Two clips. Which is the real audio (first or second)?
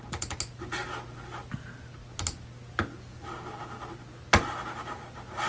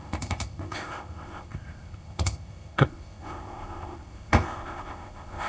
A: first